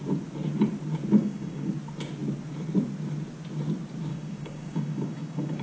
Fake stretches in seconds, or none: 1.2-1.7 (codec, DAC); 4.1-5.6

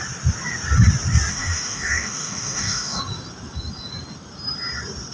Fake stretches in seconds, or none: 1.3-3.0 (codec, DAC)